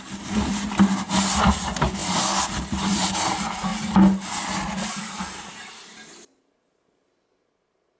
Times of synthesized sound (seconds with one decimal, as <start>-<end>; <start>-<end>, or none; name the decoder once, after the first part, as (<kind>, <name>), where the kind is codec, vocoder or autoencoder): none